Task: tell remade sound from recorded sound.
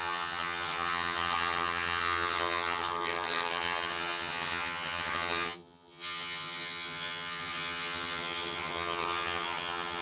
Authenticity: remade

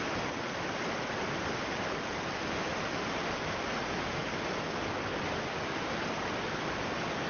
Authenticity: recorded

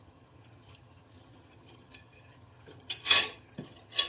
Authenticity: remade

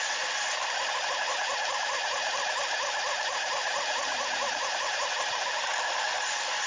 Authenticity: recorded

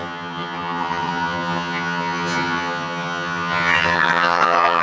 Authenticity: remade